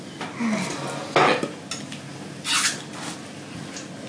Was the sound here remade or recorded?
recorded